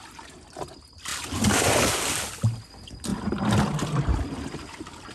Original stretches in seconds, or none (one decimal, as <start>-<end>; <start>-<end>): 0.0-5.1